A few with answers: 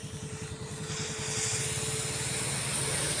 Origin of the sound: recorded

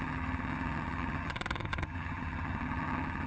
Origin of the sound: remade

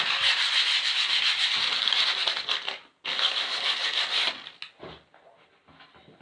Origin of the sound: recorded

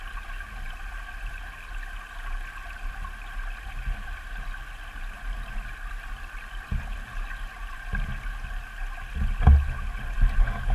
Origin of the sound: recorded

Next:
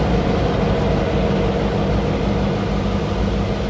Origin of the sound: recorded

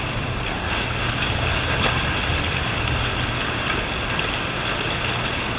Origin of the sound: recorded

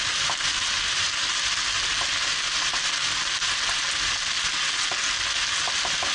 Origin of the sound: recorded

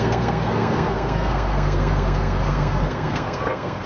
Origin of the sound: remade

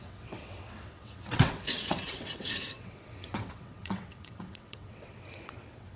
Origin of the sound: remade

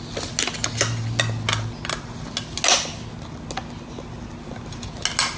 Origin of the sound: recorded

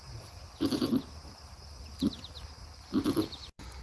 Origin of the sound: recorded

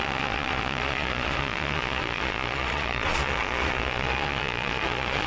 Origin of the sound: remade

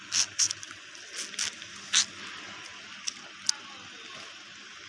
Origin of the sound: recorded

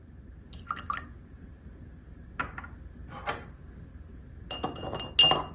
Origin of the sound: recorded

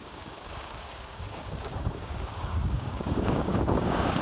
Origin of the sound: remade